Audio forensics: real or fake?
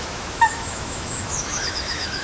fake